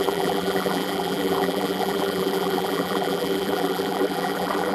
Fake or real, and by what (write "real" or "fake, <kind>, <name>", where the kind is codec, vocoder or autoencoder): fake, vocoder, BigVGAN v2